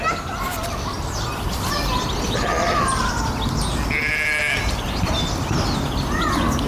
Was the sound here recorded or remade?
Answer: recorded